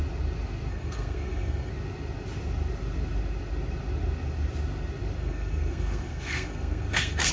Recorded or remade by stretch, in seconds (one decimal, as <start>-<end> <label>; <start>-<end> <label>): 0.0-0.7 recorded; 0.7-1.7 remade; 1.7-5.2 recorded; 5.2-7.3 remade